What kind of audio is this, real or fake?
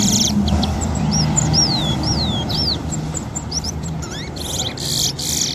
fake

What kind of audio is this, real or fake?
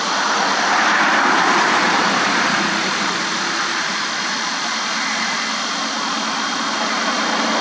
fake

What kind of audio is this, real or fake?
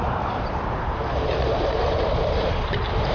fake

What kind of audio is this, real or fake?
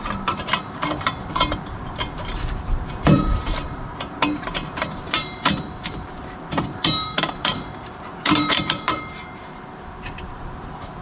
fake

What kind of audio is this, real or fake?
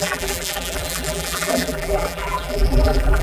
fake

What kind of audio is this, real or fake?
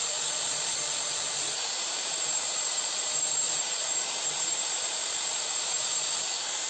fake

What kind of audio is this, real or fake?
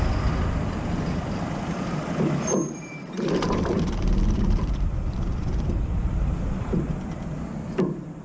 fake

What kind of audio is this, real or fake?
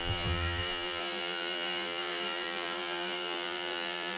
fake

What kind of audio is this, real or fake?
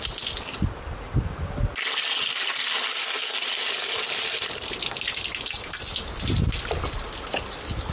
real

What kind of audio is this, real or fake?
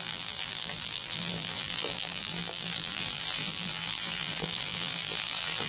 fake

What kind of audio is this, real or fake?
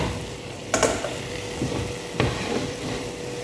fake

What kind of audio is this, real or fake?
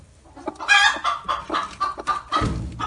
real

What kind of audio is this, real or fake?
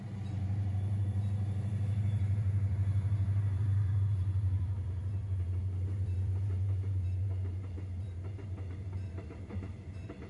fake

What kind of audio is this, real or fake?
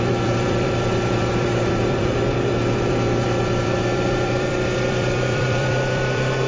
fake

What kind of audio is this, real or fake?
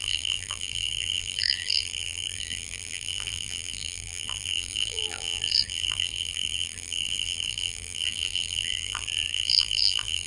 fake